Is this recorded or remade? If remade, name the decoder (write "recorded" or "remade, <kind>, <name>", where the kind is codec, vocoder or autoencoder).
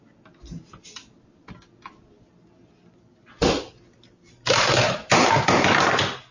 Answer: recorded